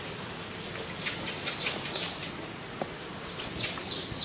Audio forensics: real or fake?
real